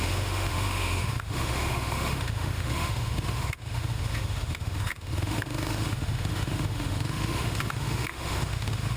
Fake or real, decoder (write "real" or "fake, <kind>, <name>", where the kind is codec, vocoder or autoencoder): fake, autoencoder, DAC-VAE